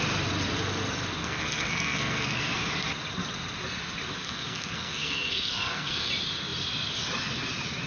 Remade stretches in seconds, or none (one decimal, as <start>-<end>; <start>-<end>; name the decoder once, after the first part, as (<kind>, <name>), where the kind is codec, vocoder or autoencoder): 1.2-2.6 (codec, SNAC); 4.2-6.1